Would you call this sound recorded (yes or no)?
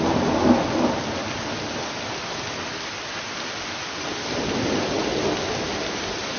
yes